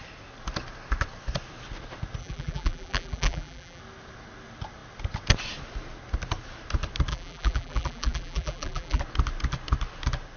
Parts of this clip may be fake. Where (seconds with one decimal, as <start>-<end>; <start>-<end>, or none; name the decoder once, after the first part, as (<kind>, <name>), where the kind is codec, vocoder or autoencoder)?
2.2-3.8 (vocoder, BigVGAN v2); 7.1-9.0